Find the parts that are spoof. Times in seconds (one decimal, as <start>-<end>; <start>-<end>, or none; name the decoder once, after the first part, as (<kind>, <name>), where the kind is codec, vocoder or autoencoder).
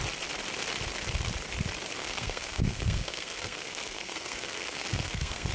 2.0-5.5 (codec, SNAC)